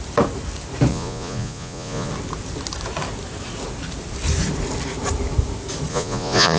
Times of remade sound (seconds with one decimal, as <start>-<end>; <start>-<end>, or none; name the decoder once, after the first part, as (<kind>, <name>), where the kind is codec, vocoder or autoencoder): 0.9-2.1 (vocoder, Vocos); 5.9-6.6